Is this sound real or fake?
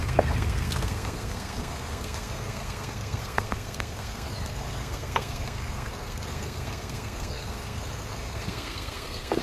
fake